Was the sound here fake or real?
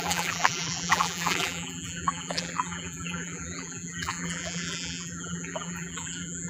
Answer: fake